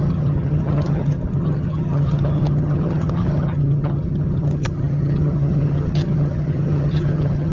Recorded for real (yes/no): no